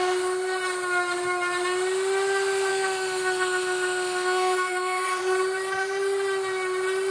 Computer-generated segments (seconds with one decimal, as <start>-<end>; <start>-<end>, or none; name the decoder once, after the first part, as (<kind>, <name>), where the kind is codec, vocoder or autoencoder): 2.7-5.2 (autoencoder, DAC-VAE)